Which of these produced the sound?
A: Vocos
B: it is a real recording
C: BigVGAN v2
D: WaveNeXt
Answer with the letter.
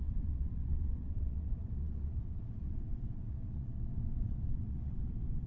D